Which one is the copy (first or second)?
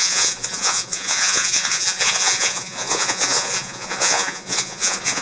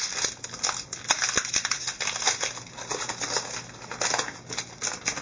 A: first